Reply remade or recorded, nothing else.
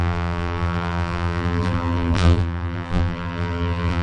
remade